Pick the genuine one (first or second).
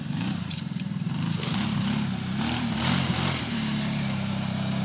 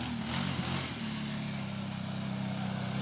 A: second